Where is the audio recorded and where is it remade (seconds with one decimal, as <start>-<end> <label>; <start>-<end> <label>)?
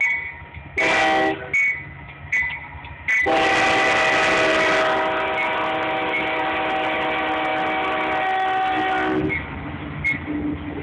0.0-10.8 recorded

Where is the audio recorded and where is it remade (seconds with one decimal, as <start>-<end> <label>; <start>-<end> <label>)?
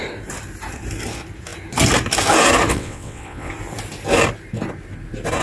0.0-2.7 recorded; 2.7-3.5 remade; 3.5-5.4 recorded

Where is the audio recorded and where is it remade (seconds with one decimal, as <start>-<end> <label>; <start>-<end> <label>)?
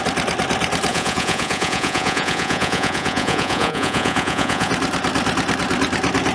0.0-0.9 recorded; 0.9-4.7 remade; 4.7-6.3 recorded